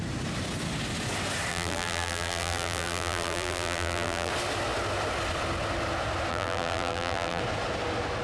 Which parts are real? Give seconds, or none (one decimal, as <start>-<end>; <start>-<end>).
0.0-1.5; 4.3-6.3; 7.4-8.2